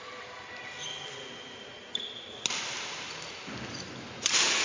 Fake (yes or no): no